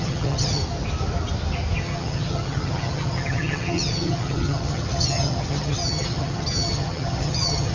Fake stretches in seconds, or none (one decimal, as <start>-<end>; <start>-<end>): 0.0-0.6; 1.8-7.7